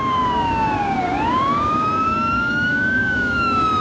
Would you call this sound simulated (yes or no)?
yes